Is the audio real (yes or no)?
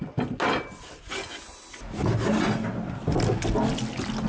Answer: yes